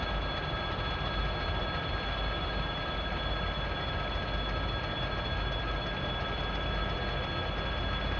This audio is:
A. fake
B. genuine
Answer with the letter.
B